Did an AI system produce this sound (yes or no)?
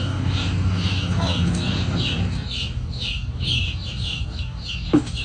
yes